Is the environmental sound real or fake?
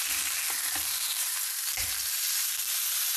real